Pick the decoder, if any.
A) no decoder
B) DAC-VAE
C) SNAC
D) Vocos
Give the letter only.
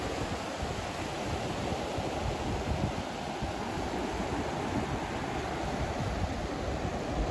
A